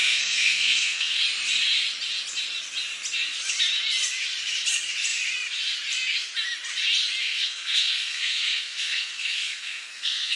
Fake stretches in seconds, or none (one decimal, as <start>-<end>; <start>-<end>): 0.0-1.2; 7.2-10.4